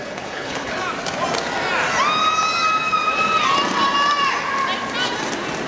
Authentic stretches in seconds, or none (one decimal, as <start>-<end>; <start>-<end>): 0.8-5.7